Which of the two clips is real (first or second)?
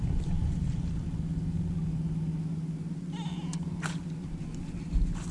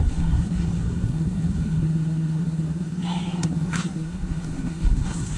first